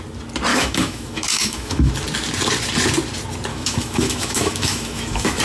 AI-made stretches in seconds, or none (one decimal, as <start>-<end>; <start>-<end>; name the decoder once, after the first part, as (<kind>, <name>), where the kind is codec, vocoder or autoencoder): 0.5-1.9 (autoencoder, DAC-VAE); 3.5-5.4